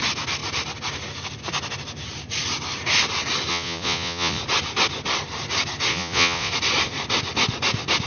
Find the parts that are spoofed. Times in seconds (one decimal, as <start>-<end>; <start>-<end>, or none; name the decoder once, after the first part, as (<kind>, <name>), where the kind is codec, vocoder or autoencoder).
3.5-4.4 (vocoder, Vocos); 5.9-6.5